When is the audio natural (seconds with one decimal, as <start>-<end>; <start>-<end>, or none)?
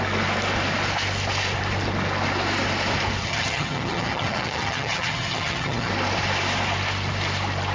0.0-3.2; 5.9-7.7